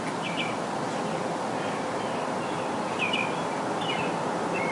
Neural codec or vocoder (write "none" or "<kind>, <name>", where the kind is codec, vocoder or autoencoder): none